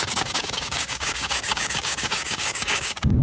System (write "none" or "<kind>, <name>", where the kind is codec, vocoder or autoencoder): codec, DAC